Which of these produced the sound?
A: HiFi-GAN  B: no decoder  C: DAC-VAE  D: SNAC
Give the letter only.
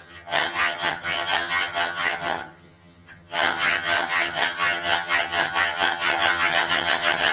A